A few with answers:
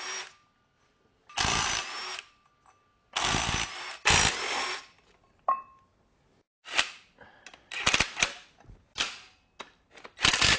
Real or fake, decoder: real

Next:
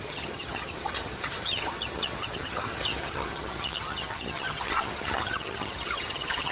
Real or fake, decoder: fake, vocoder, HiFi-GAN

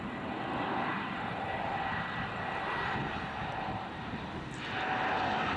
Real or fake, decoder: real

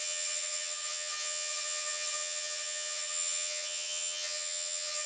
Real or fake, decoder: fake, vocoder, HiFi-GAN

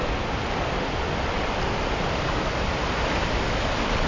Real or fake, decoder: real